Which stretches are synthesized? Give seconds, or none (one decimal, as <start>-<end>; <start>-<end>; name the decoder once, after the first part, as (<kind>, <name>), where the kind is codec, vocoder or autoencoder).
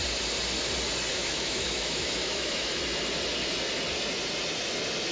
1.1-2.8 (autoencoder, DAC-VAE)